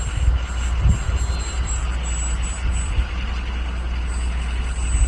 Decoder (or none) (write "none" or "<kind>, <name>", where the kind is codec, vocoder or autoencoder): none